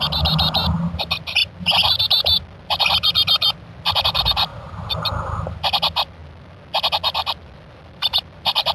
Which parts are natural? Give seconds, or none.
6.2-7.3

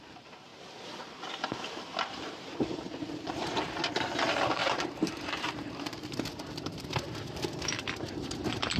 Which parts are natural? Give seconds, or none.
0.5-2.2

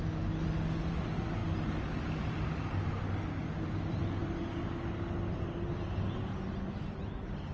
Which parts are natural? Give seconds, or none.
0.0-7.5

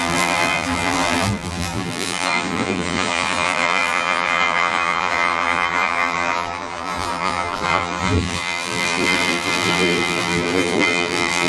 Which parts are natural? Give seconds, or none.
none